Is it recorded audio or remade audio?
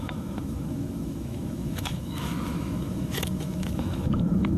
remade